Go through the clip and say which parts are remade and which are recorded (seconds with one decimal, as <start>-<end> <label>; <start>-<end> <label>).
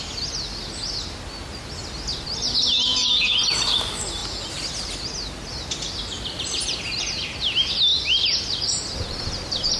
0.0-2.9 recorded; 2.9-3.4 remade; 3.4-9.8 recorded